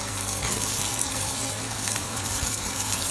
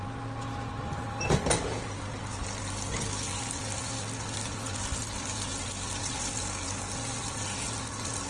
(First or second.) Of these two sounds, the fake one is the first